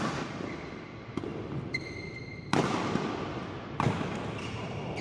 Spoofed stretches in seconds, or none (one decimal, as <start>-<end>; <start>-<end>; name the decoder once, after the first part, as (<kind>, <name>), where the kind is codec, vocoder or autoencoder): 0.0-5.0 (vocoder, BigVGAN v2)